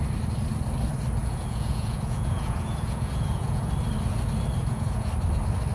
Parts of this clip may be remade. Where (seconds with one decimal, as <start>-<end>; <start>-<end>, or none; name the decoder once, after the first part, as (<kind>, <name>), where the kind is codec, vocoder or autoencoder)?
1.2-3.7 (vocoder, Vocos); 4.6-5.1